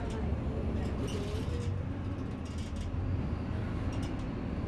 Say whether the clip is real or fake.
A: real